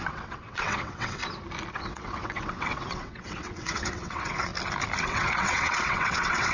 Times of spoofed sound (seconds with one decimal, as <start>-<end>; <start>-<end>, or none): 0.0-1.2; 1.7-4.5; 5.0-6.5